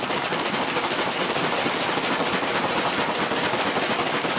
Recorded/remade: recorded